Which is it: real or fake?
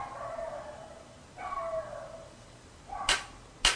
real